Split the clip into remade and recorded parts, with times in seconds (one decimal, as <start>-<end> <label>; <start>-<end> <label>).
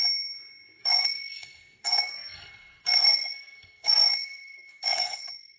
0.0-0.8 recorded; 0.8-5.6 remade